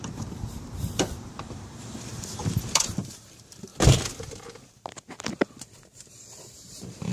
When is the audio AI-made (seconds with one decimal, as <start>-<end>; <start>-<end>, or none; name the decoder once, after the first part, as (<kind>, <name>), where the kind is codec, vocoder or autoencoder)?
0.0-3.7 (vocoder, BigVGAN v2); 6.1-7.1